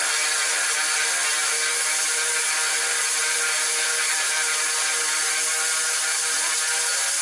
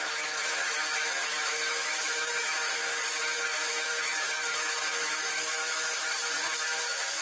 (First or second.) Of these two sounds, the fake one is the second